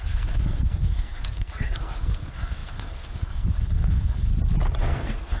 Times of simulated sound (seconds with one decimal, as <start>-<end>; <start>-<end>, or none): 0.0-4.3; 4.8-5.4